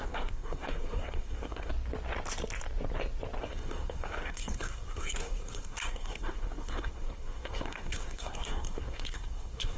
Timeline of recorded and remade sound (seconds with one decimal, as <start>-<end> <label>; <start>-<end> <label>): 0.0-1.7 remade; 1.7-3.4 recorded; 3.4-9.8 remade